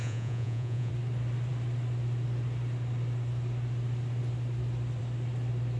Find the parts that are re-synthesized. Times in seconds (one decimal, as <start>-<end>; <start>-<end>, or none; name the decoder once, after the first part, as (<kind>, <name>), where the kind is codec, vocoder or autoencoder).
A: 0.0-0.9 (vocoder, Vocos)

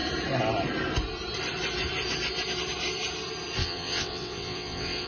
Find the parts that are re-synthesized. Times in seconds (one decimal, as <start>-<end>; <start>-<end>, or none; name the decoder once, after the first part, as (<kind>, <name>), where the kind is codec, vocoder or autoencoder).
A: 3.6-5.1 (vocoder, WaveNeXt)

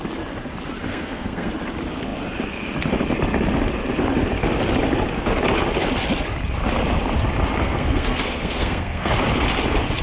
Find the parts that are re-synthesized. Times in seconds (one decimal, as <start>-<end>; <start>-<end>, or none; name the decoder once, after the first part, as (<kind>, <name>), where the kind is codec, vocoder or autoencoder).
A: 0.9-1.5 (codec, SNAC); 7.6-9.1

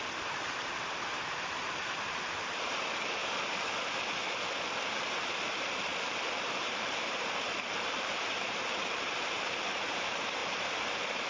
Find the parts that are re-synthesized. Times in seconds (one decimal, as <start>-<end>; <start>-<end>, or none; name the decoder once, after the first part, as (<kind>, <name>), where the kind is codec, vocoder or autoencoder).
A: 0.0-3.2 (vocoder, BigVGAN v2); 5.4-11.3

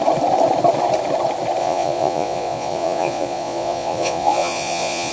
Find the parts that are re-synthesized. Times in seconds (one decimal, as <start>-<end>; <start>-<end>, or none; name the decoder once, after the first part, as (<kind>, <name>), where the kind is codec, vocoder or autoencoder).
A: 1.6-5.1 (vocoder, Vocos)

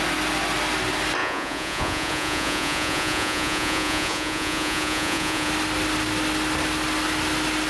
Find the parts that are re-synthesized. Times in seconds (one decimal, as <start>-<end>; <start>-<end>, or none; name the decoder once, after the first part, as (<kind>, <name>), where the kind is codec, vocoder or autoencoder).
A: 1.2-5.5 (vocoder, Vocos)

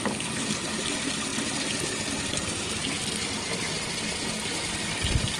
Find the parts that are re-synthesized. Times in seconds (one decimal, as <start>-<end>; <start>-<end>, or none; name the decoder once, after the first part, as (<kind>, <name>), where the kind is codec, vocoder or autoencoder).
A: none

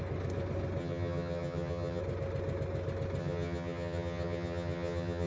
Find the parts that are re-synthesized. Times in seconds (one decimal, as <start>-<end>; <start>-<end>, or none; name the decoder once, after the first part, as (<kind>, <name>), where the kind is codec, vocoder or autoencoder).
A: 0.8-2.0 (vocoder, HiFi-GAN); 3.2-5.3